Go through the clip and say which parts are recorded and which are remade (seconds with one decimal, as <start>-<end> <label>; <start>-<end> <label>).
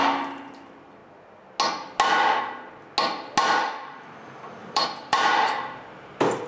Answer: 0.0-4.6 recorded; 4.6-6.5 remade